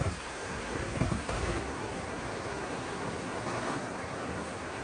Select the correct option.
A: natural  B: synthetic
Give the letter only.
B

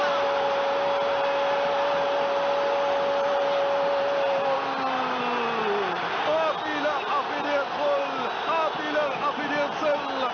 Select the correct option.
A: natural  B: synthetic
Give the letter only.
A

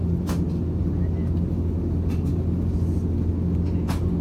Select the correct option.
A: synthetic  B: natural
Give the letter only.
B